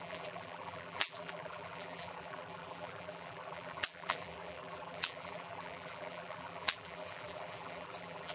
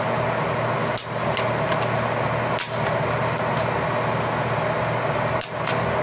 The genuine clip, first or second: second